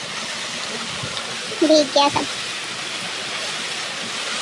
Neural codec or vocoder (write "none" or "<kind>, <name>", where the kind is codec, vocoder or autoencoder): none